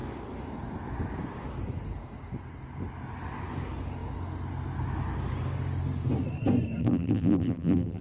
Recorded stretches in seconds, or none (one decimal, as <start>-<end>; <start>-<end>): 0.0-6.8